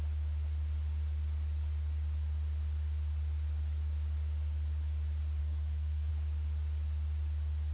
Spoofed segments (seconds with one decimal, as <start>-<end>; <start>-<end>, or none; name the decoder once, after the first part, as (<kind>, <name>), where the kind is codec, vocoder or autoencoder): 5.4-6.1 (codec, SNAC)